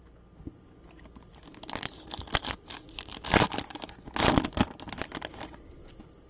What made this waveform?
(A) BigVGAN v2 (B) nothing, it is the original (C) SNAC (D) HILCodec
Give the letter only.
B